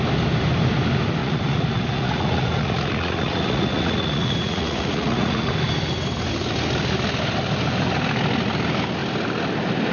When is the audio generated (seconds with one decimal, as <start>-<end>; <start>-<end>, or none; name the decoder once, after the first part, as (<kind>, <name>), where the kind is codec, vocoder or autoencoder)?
1.2-5.5 (vocoder, Vocos)